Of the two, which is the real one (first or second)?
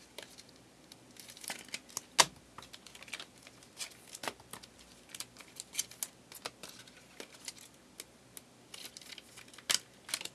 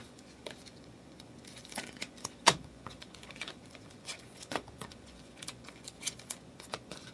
first